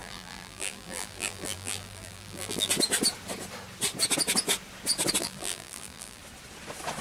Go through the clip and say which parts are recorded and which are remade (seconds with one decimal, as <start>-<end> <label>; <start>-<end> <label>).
0.0-2.7 remade; 2.7-5.2 recorded; 5.2-6.2 remade; 6.2-7.0 recorded